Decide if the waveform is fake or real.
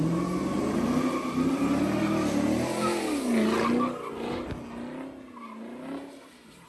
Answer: real